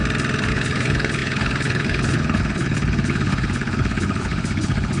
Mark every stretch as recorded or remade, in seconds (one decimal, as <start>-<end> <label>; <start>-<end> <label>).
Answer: 0.0-0.5 recorded; 0.5-5.0 remade